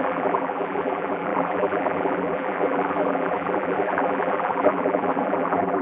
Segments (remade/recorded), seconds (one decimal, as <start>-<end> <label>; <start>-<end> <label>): 0.0-5.8 remade